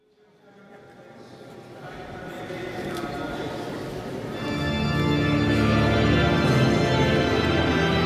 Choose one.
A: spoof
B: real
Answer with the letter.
B